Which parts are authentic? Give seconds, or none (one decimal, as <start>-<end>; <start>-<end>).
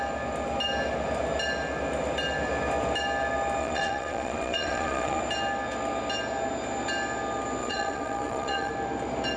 0.0-3.6; 5.2-7.6; 8.7-9.4